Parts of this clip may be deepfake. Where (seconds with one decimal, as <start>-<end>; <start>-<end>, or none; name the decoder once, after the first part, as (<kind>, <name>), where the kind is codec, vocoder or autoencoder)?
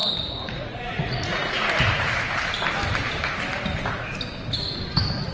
0.0-1.7 (vocoder, Vocos)